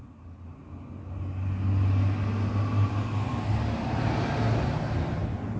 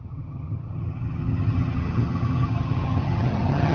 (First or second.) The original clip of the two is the first